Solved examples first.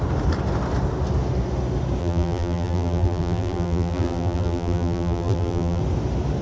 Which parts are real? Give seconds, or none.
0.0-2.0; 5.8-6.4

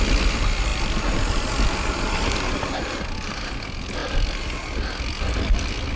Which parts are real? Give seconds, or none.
0.0-6.0

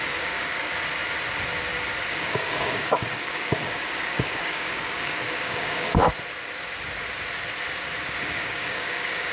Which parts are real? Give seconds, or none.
0.7-2.1; 6.0-8.2